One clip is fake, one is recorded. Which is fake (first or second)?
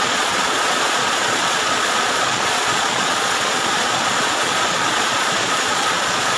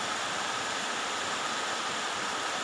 first